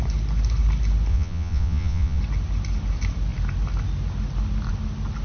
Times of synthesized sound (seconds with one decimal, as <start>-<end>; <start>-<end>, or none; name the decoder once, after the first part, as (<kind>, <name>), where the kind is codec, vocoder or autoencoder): 1.1-2.2 (vocoder, Vocos)